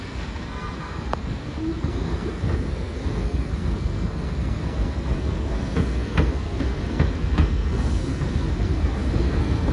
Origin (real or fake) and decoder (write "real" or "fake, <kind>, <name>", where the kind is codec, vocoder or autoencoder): fake, codec, SNAC